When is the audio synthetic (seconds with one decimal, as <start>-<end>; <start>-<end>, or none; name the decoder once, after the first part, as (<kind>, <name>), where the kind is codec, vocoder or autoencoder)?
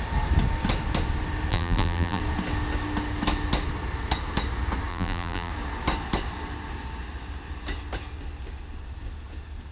1.5-2.2 (vocoder, BigVGAN v2); 4.9-5.5